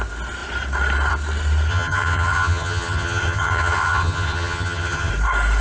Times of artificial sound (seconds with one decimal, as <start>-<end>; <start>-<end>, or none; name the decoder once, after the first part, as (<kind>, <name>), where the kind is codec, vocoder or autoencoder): 1.7-5.1 (vocoder, HiFi-GAN)